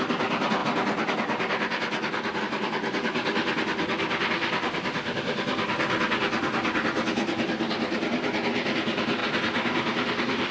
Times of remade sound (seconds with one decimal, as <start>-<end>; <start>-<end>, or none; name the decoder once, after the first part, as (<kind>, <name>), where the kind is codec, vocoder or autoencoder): none